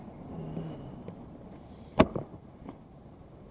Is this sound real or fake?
fake